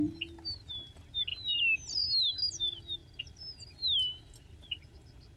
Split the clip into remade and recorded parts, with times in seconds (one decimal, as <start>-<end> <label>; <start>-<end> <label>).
0.0-5.4 recorded